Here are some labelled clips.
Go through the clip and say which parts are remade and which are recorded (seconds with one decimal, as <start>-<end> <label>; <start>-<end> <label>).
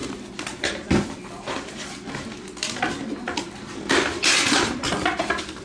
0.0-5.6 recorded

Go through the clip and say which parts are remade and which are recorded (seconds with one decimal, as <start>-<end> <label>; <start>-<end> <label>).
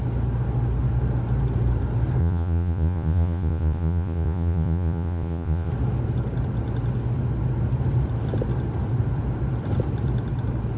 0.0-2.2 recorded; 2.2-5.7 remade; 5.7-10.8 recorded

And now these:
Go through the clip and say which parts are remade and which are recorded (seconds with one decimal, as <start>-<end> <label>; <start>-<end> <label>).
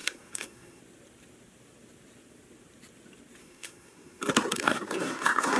0.0-0.8 remade; 0.8-3.4 recorded; 3.4-5.6 remade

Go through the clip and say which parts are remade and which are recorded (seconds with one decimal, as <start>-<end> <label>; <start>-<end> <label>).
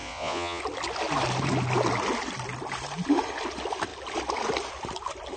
0.0-0.6 remade; 0.6-5.4 recorded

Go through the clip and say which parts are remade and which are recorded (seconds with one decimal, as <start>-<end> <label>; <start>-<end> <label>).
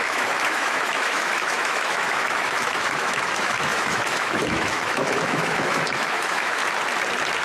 0.0-6.6 remade; 6.6-7.4 recorded